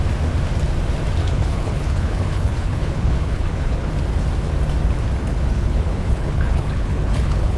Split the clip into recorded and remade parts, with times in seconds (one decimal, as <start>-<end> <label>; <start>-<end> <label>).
0.0-1.2 recorded; 1.2-3.9 remade; 3.9-5.3 recorded; 5.3-7.6 remade